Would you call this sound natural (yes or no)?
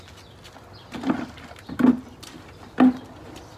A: yes